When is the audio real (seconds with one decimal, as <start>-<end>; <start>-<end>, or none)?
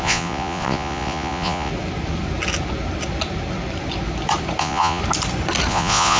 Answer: 1.7-4.6; 5.0-5.7